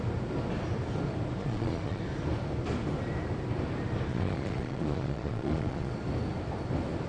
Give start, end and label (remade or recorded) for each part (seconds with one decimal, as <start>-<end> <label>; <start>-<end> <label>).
0.0-1.4 recorded; 1.4-2.0 remade; 2.0-4.1 recorded; 4.1-5.9 remade; 5.9-7.1 recorded